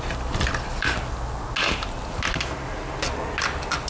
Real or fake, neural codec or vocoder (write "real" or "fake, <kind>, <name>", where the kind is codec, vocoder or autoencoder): real